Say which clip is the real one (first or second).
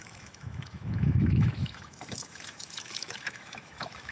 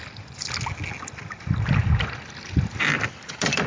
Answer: second